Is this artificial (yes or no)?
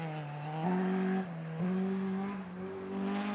no